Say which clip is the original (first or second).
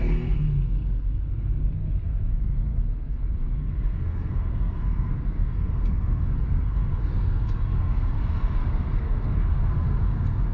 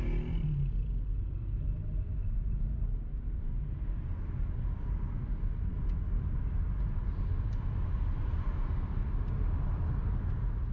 second